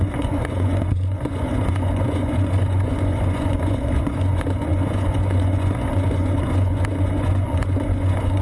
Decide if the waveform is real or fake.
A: fake